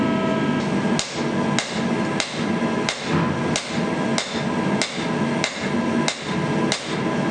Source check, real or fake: real